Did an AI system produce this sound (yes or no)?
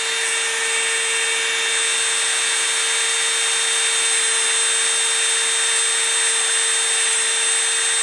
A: no